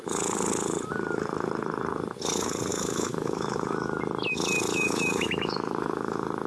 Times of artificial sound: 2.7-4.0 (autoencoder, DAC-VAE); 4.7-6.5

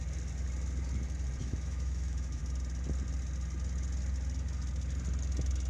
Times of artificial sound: 1.4-2.4 (autoencoder, DAC-VAE)

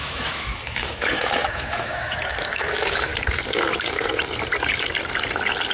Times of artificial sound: 0.0-3.1 (autoencoder, DAC-VAE)

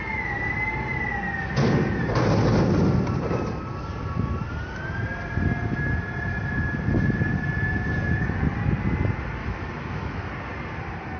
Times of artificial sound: 9.4-10.3 (autoencoder, DAC-VAE)

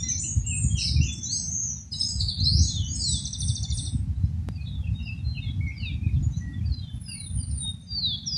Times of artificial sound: none